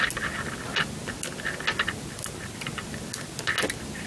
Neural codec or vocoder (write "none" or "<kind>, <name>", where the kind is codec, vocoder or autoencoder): none